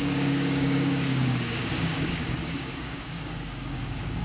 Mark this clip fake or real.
fake